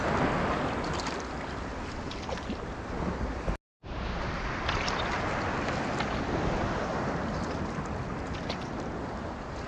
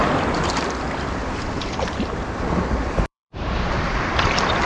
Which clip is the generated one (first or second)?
second